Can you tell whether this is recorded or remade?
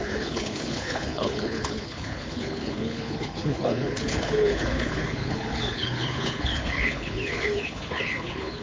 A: remade